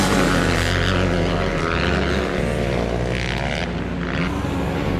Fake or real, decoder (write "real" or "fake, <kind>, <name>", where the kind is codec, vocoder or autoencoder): real